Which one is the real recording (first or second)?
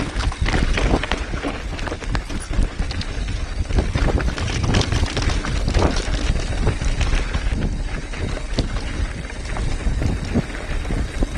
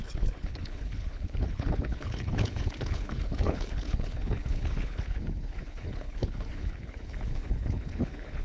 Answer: first